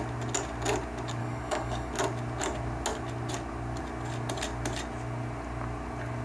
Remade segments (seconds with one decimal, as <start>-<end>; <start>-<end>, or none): 1.2-1.9